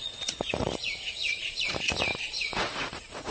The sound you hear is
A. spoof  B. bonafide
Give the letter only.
A